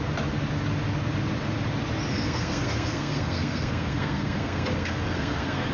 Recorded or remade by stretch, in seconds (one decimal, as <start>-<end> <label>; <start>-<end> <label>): 0.0-2.1 recorded; 2.1-5.7 remade